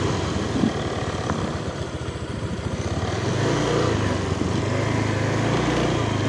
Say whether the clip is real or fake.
real